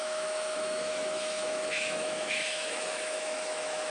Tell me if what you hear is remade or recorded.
remade